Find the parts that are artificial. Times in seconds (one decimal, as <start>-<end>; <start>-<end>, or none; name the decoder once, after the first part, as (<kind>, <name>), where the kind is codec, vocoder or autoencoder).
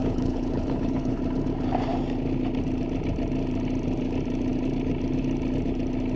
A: 0.0-1.2 (codec, HILCodec)